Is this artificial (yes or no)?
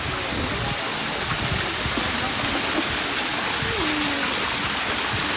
no